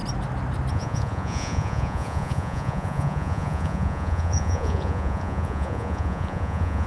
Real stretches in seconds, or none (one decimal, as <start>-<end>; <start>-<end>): 0.0-0.7

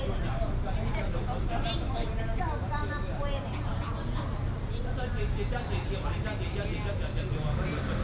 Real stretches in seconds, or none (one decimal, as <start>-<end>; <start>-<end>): 0.0-8.0

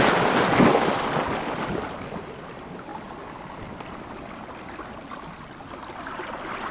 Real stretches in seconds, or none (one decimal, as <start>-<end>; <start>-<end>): 0.0-6.7

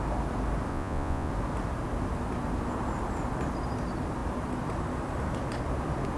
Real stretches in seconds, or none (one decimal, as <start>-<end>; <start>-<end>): 0.0-0.7; 1.3-6.2

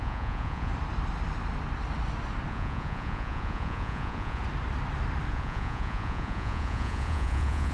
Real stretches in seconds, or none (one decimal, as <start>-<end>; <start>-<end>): 0.7-2.5; 4.4-5.3

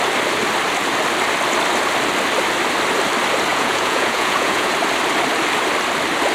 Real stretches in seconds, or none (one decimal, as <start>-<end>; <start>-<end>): 0.0-3.5; 4.7-6.3

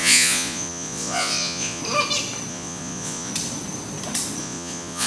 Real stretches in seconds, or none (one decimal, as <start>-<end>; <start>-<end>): 1.8-2.5; 3.3-4.4